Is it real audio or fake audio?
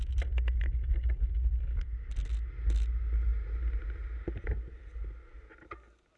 real